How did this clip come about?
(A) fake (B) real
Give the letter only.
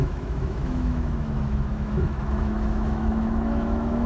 A